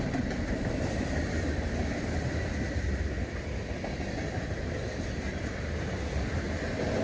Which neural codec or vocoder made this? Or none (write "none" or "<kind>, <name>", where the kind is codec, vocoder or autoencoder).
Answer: none